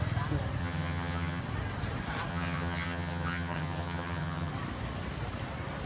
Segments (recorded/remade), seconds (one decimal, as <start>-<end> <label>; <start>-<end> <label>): 0.0-0.6 recorded; 0.6-1.4 remade; 1.4-2.3 recorded; 2.3-4.5 remade; 4.5-5.9 recorded